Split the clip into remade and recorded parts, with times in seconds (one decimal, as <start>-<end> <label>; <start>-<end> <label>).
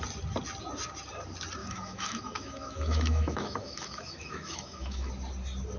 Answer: 0.0-1.6 recorded; 1.6-5.1 remade; 5.1-5.8 recorded